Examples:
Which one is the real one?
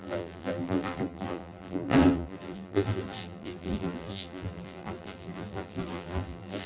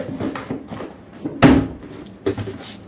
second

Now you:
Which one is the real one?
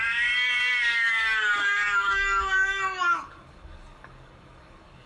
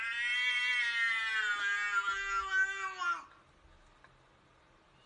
second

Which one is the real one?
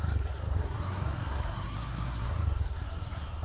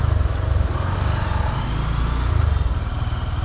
second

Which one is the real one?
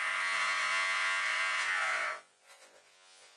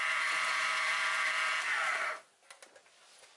second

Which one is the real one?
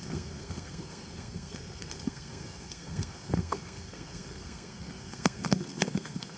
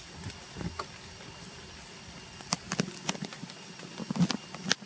second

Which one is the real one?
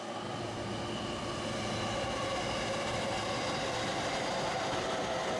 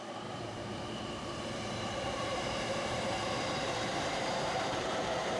first